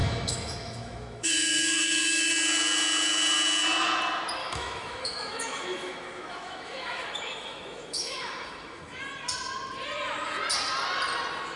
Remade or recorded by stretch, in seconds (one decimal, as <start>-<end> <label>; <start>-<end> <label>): 0.0-2.3 remade; 2.3-4.4 recorded; 4.4-9.0 remade; 9.0-11.6 recorded